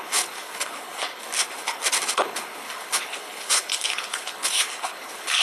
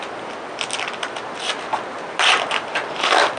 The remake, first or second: first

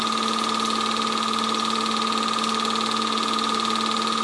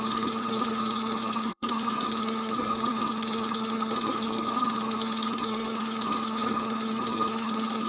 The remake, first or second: second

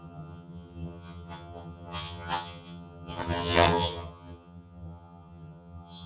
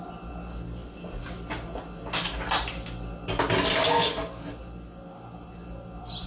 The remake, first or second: first